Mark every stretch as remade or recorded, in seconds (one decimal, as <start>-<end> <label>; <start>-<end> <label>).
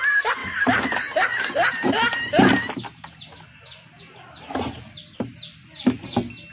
0.0-0.4 recorded; 0.4-1.9 remade; 1.9-6.5 recorded